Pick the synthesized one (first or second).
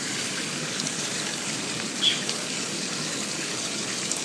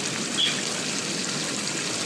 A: first